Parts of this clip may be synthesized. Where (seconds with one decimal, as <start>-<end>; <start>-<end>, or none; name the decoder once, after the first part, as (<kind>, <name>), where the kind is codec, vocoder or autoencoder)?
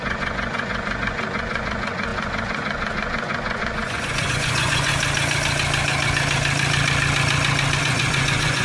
0.0-4.9 (vocoder, Vocos); 7.8-8.6